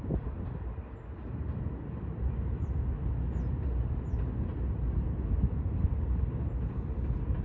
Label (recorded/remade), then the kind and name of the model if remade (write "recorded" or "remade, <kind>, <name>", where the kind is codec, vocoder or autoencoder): recorded